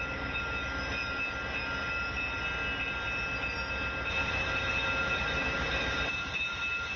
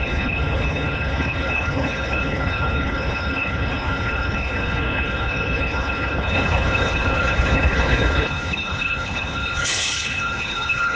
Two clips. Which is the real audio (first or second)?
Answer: first